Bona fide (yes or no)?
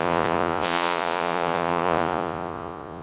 no